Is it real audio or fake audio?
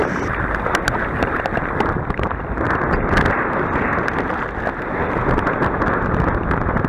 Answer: real